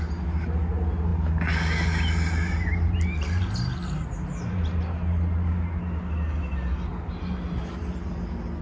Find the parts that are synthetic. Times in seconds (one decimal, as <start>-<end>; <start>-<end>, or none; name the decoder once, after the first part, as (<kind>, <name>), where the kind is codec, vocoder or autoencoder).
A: none